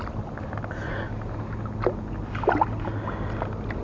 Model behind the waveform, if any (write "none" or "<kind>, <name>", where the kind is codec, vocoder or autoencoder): none